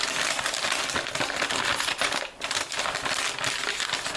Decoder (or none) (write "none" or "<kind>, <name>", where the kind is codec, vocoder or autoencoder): none